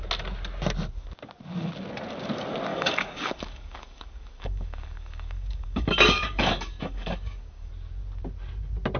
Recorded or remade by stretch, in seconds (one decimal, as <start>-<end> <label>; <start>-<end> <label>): 0.0-2.7 recorded; 2.7-7.7 remade; 7.7-9.0 recorded